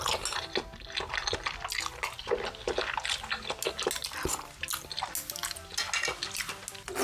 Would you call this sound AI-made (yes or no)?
no